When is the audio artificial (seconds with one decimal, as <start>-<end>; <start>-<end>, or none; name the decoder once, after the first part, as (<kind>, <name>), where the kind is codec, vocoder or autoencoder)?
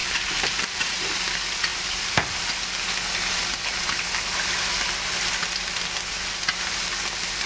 0.0-1.1 (vocoder, BigVGAN v2); 1.7-2.5